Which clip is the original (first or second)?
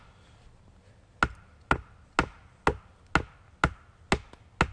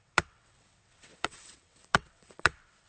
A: first